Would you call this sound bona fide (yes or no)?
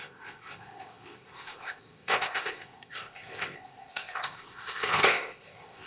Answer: no